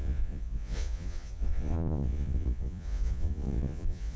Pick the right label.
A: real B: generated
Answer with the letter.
B